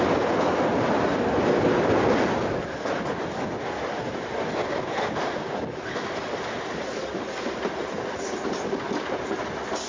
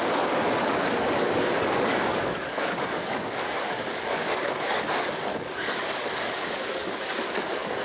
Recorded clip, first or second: first